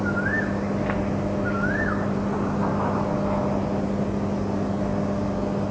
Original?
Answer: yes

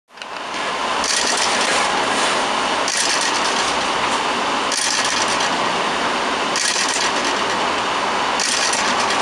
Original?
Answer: yes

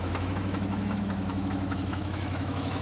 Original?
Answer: no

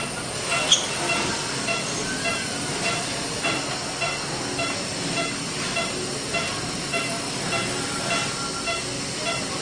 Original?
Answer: yes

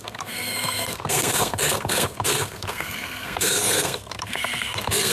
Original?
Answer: no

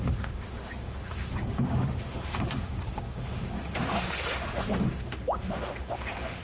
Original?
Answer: no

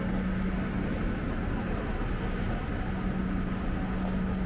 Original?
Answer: yes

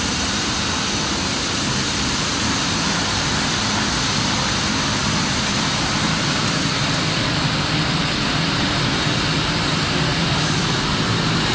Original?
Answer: no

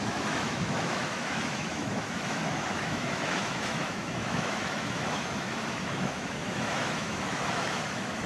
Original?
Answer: no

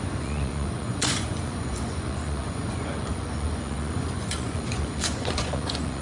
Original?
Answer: no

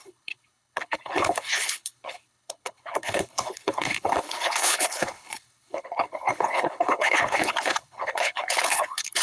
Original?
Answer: no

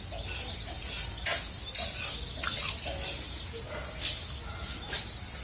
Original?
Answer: yes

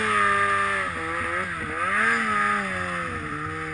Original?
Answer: yes